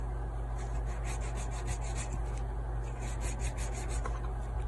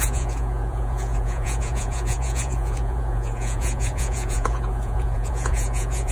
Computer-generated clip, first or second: second